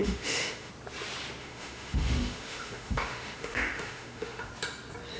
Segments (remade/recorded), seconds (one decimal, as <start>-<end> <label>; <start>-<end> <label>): 0.0-0.7 remade; 0.7-1.4 recorded; 1.4-4.5 remade; 4.5-5.2 recorded